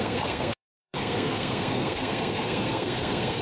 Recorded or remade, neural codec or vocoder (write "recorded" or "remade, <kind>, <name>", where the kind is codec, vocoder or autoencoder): remade, codec, SNAC